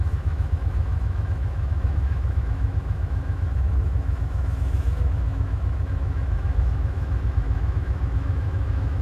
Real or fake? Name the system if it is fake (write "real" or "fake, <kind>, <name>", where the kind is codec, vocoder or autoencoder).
fake, autoencoder, DAC-VAE